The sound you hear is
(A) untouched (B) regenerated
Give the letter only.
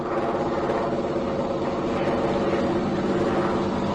A